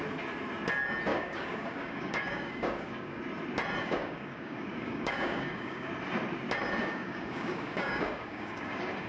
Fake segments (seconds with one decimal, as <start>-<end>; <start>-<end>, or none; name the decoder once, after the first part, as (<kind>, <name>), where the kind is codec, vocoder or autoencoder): 1.1-3.2 (codec, DAC); 3.8-5.9; 6.8-9.1